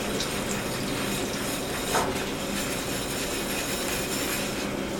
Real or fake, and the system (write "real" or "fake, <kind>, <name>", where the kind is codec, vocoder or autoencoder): real